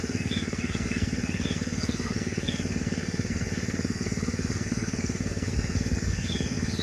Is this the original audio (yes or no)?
no